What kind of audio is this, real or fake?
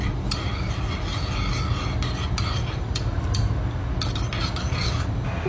real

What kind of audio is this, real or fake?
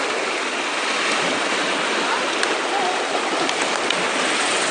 real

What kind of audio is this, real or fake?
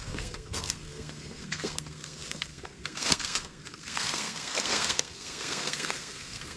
fake